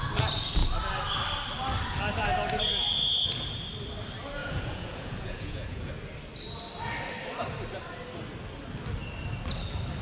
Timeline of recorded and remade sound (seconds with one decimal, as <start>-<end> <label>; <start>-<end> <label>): 0.0-4.4 recorded; 4.4-5.9 remade; 5.9-10.0 recorded